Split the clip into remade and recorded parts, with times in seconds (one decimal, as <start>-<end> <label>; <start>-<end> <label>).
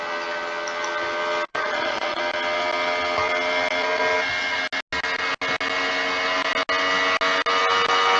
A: 0.0-1.5 recorded; 1.5-2.2 remade; 2.2-8.2 recorded